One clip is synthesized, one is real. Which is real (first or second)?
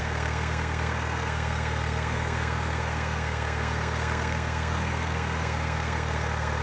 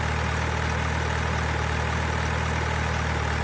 second